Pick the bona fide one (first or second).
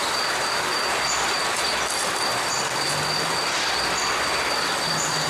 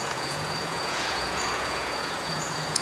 first